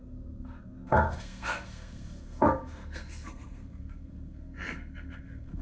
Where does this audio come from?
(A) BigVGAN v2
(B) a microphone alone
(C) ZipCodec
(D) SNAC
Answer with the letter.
D